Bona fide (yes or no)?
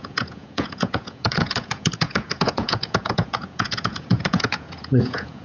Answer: no